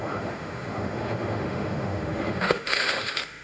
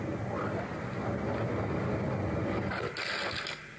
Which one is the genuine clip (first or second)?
second